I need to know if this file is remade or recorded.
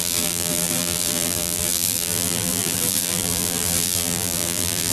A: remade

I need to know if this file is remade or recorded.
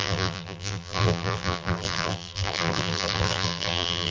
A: remade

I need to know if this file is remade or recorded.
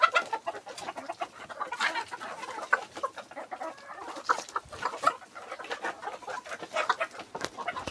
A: recorded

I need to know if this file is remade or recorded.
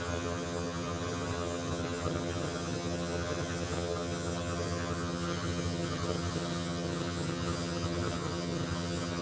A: remade